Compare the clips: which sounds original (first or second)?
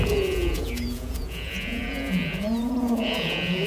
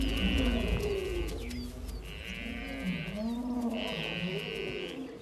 second